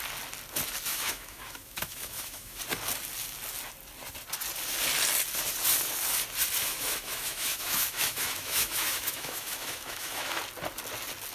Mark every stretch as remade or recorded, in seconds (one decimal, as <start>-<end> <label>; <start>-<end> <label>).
0.0-0.9 recorded; 0.9-2.6 remade; 2.6-6.6 recorded; 6.6-10.4 remade; 10.4-11.3 recorded